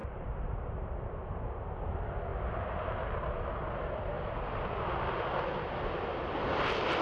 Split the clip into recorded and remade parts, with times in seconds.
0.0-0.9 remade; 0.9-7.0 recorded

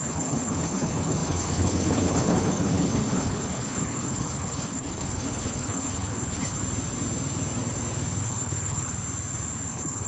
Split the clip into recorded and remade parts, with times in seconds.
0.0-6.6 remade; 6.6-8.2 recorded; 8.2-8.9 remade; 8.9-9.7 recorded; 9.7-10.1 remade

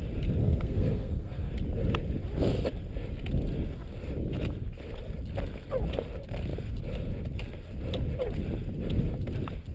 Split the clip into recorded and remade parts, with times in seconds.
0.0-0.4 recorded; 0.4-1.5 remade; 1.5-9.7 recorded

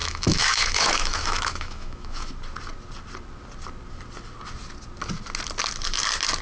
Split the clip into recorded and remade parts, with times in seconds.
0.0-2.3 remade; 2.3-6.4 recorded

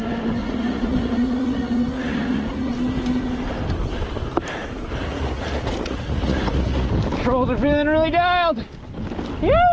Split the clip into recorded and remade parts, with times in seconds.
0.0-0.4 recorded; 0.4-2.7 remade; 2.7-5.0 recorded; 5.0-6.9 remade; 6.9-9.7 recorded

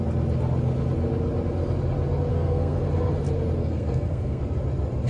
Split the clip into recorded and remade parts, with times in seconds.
0.0-2.3 recorded; 2.3-2.8 remade; 2.8-3.6 recorded; 3.6-4.4 remade; 4.4-5.1 recorded

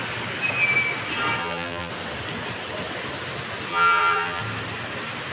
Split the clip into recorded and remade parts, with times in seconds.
0.0-1.4 recorded; 1.4-1.9 remade; 1.9-3.7 recorded; 3.7-4.4 remade; 4.4-5.3 recorded